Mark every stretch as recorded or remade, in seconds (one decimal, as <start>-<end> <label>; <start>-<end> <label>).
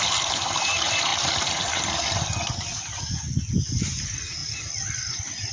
0.0-1.1 remade; 1.1-4.0 recorded; 4.0-5.5 remade